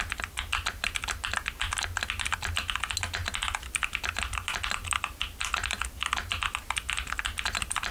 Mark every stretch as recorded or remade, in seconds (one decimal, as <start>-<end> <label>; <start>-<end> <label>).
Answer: 0.0-7.9 recorded